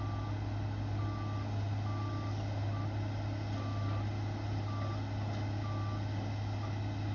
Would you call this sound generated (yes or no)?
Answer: no